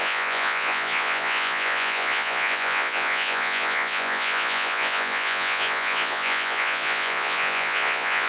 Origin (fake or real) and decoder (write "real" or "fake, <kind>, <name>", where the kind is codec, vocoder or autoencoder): fake, vocoder, Vocos